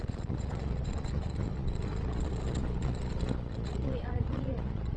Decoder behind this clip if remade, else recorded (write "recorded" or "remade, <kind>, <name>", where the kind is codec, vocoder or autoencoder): remade, vocoder, Vocos